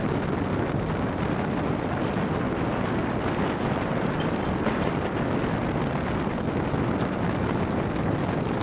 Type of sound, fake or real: real